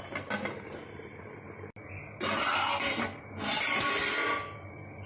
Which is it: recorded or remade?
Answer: recorded